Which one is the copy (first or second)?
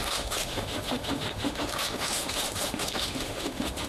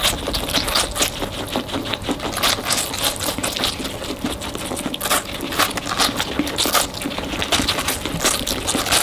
first